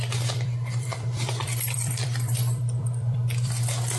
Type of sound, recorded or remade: remade